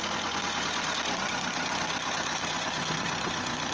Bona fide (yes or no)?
no